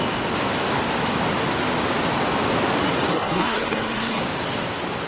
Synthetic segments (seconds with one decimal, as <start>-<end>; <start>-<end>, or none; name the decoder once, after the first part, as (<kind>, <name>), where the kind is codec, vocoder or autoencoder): 3.1-4.2 (codec, SNAC)